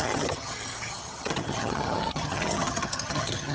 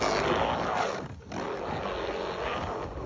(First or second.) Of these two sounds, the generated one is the first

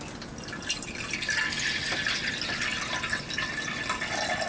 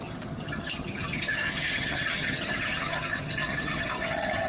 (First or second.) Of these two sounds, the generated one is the second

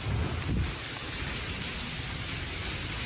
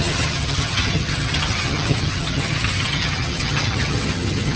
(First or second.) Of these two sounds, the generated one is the second